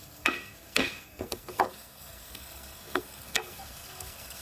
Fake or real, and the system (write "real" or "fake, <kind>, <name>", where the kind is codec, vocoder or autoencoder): fake, codec, SNAC